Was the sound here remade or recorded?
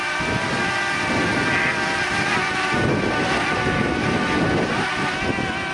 recorded